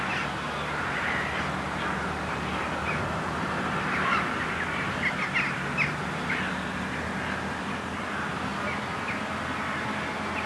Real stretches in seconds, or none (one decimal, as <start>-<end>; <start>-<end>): 0.0-10.5